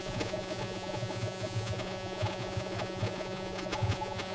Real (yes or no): no